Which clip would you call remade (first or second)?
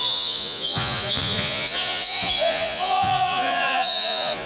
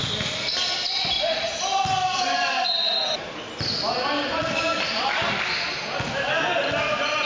first